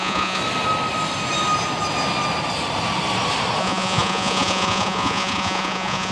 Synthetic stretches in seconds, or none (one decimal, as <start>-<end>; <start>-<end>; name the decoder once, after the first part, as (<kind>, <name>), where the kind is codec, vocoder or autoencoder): 0.0-0.4 (vocoder, Vocos); 3.6-6.1